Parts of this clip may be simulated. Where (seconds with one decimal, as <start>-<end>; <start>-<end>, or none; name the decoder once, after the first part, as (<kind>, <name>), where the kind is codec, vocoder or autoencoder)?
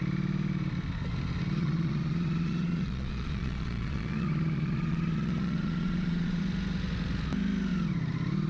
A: 1.6-6.4 (vocoder, Vocos)